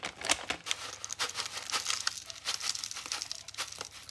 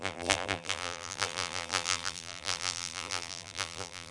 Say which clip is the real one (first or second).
first